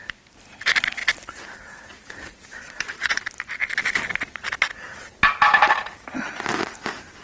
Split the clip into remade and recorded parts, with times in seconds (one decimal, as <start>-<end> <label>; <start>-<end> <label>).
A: 0.0-2.5 recorded; 2.5-3.2 remade; 3.2-7.2 recorded